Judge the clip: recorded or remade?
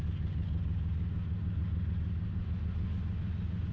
recorded